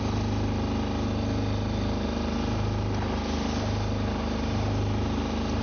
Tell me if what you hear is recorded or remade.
recorded